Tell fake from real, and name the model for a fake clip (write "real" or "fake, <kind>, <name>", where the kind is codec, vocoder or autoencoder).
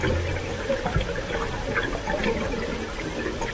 real